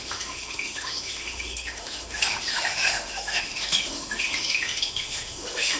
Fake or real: fake